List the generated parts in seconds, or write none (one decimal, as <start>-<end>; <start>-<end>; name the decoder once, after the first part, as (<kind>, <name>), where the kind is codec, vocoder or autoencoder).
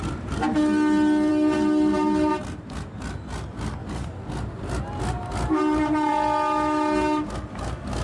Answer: none